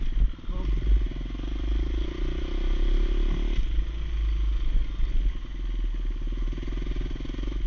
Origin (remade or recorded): recorded